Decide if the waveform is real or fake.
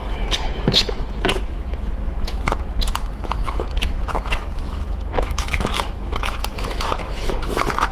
fake